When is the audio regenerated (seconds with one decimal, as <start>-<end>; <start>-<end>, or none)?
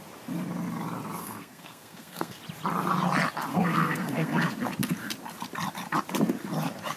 1.2-2.4; 3.5-4.5